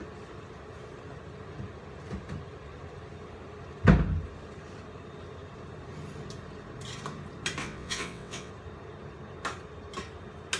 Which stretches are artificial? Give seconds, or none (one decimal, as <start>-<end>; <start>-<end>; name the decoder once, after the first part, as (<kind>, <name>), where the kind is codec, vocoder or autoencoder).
7.6-8.5 (vocoder, WaveNeXt)